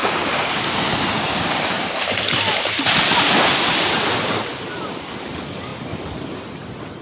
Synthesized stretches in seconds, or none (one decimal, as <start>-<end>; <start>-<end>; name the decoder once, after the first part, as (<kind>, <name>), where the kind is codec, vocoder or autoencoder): 1.1-5.7 (vocoder, BigVGAN v2); 6.5-7.0